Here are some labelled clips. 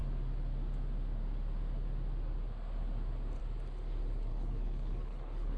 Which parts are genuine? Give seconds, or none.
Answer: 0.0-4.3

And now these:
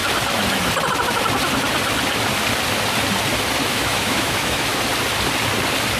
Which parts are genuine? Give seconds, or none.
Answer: 0.0-3.6; 4.7-6.0

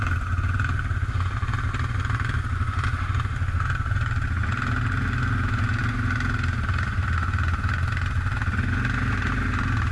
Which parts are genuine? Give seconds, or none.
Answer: 0.0-9.9

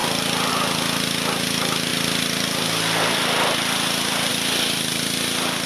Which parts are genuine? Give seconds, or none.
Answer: 0.0-5.7

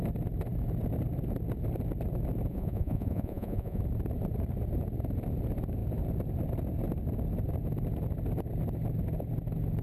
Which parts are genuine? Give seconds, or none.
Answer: 0.0-2.5; 3.8-9.8

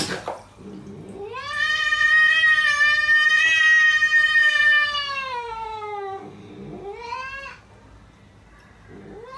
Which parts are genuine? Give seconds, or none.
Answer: 0.0-4.4; 6.5-9.4

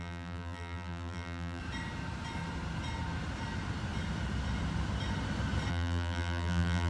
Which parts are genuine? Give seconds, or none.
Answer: 1.6-5.7